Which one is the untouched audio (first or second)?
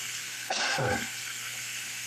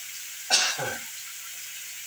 second